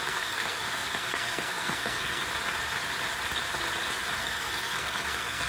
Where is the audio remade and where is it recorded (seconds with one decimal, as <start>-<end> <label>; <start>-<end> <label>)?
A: 0.0-2.2 remade; 2.2-4.2 recorded; 4.2-5.5 remade